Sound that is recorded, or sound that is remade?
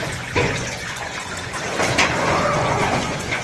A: remade